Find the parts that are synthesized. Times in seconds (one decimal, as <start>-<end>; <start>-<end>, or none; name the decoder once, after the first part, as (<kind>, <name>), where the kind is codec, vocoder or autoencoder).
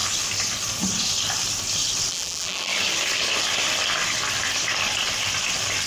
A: 2.1-2.7 (vocoder, BigVGAN v2)